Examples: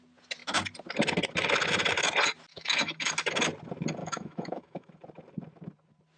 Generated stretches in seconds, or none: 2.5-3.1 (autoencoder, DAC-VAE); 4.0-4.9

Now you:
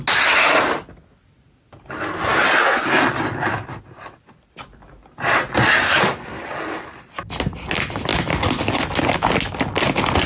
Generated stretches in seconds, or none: none